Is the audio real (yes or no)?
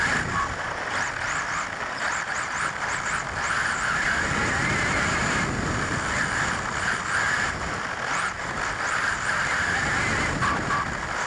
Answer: yes